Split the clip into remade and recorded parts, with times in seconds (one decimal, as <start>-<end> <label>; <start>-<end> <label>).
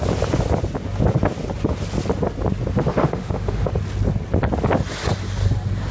0.0-2.9 recorded; 2.9-3.7 remade; 3.7-5.9 recorded